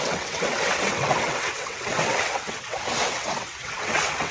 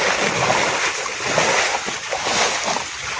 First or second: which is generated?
first